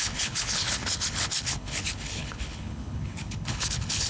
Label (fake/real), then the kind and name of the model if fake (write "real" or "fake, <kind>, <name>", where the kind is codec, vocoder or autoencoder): fake, codec, HILCodec